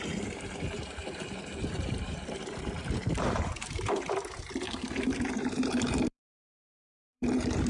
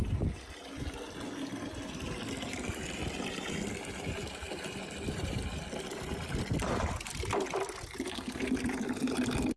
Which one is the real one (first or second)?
second